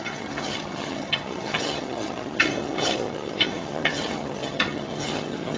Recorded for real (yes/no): no